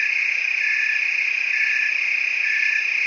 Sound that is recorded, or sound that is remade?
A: recorded